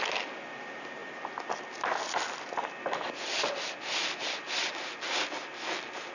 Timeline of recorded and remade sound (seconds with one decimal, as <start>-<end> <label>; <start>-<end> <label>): 0.0-6.1 recorded